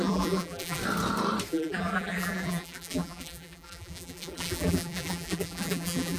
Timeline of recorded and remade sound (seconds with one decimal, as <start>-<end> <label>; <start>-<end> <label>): 0.0-0.8 remade; 0.8-1.5 recorded; 1.5-6.2 remade